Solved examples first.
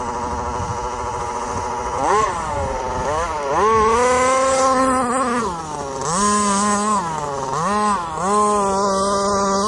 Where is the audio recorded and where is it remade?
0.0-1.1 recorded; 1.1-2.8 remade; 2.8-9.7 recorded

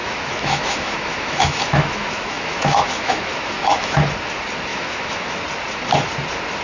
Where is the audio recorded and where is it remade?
0.0-4.0 remade; 4.0-4.7 recorded; 4.7-5.3 remade; 5.3-6.6 recorded

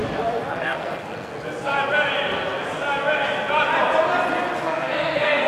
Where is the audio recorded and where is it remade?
0.0-0.5 recorded; 0.5-1.3 remade; 1.3-4.6 recorded; 4.6-5.5 remade

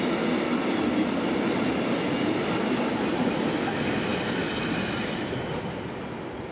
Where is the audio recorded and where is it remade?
0.0-6.5 recorded

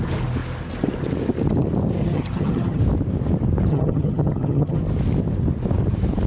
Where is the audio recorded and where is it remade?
0.0-2.0 recorded; 2.0-2.8 remade; 2.8-3.7 recorded; 3.7-4.8 remade; 4.8-6.3 recorded

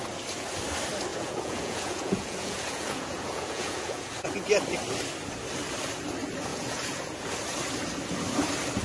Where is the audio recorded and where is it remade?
0.0-1.1 recorded; 1.1-4.2 remade; 4.2-6.5 recorded; 6.5-7.3 remade; 7.3-8.8 recorded

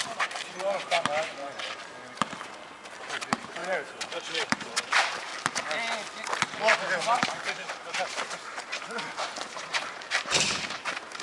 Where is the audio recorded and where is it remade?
0.0-1.4 remade; 1.4-3.0 recorded; 3.0-5.3 remade; 5.3-7.2 recorded; 7.2-11.2 remade

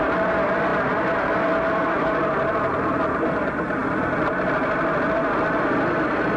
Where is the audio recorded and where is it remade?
0.0-0.7 recorded; 0.7-2.5 remade; 2.5-6.4 recorded